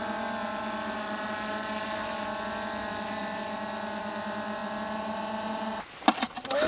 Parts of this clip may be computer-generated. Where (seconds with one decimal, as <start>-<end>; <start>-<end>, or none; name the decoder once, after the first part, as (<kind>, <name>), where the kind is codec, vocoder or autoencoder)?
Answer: none